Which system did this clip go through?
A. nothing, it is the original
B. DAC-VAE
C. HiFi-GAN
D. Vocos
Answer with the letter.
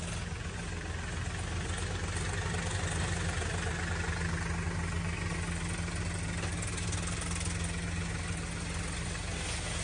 A